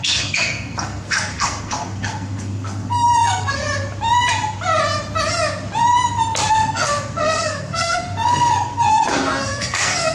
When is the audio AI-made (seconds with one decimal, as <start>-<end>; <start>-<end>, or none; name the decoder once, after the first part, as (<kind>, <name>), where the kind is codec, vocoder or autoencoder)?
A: 0.0-3.6 (codec, SNAC); 6.5-10.1